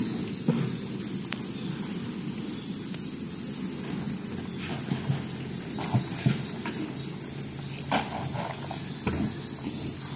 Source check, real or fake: real